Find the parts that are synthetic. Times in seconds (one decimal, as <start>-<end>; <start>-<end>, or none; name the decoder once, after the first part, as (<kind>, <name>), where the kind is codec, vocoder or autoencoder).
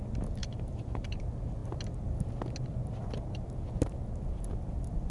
0.4-1.2 (vocoder, BigVGAN v2)